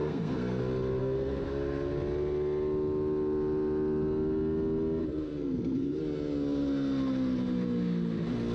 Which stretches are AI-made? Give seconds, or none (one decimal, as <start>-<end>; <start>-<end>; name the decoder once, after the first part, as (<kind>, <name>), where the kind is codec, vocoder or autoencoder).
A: 0.0-0.6 (codec, SNAC); 1.0-1.9; 5.0-6.0